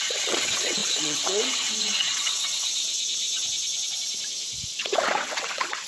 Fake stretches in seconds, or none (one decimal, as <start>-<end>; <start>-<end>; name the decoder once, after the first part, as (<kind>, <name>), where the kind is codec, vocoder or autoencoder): 0.0-3.2 (vocoder, WaveNeXt); 4.8-5.9

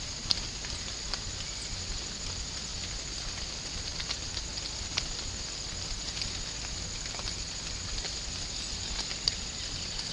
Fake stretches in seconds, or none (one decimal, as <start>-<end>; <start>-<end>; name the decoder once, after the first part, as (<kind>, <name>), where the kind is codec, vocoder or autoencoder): none

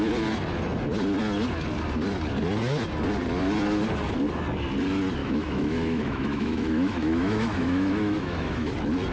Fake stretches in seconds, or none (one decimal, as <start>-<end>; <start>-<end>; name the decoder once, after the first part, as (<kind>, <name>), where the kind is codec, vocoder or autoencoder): 5.2-8.7 (autoencoder, DAC-VAE)

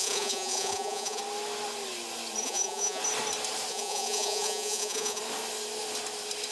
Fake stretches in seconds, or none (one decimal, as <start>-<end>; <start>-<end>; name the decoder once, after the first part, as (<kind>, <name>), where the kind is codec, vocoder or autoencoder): 0.0-1.2 (vocoder, Vocos); 2.4-3.0; 3.7-5.2

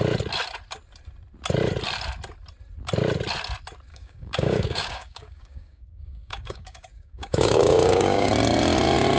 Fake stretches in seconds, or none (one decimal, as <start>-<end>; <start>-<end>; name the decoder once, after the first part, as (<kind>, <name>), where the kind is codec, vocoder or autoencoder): 3.9-8.3 (codec, DAC)